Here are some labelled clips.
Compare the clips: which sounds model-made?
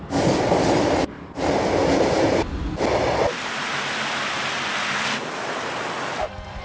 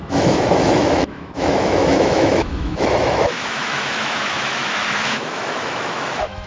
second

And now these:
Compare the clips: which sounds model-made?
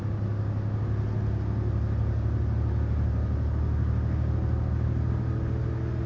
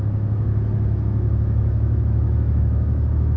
second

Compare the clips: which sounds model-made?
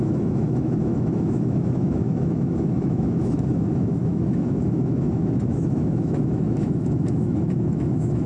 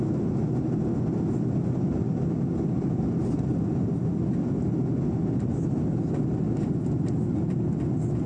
first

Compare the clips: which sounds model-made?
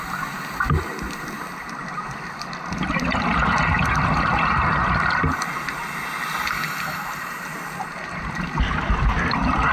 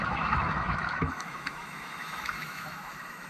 second